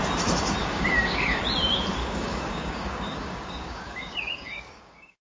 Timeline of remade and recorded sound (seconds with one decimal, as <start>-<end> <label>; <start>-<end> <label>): 0.0-0.6 recorded; 0.6-1.4 remade; 1.4-2.0 recorded; 2.0-5.3 remade